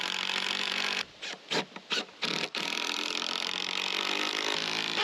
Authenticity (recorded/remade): recorded